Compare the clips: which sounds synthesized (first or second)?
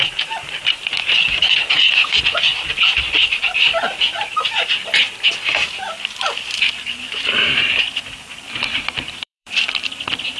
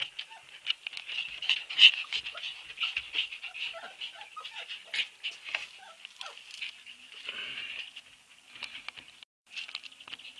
first